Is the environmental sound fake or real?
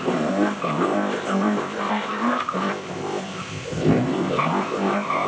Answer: fake